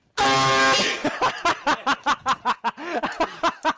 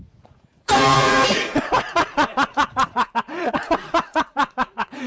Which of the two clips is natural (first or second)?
first